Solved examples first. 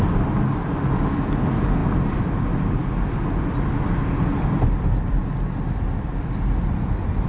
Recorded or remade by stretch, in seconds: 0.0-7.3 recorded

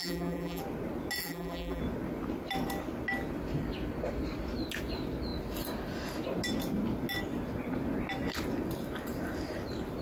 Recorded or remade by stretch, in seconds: 0.0-0.6 remade; 0.6-1.2 recorded; 1.2-1.8 remade; 1.8-10.0 recorded